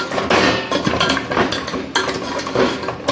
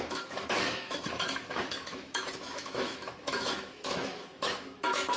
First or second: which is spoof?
second